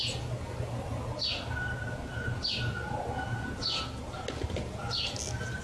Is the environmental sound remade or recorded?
recorded